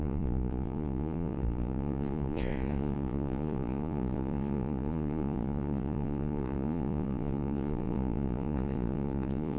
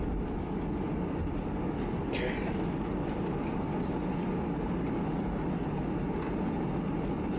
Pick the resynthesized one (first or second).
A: first